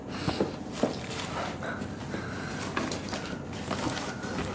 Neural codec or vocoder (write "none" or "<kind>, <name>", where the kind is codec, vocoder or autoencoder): none